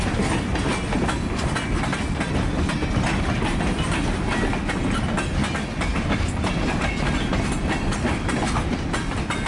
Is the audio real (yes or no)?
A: yes